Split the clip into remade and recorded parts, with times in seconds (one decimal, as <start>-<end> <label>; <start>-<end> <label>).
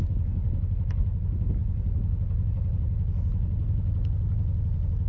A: 0.0-5.1 recorded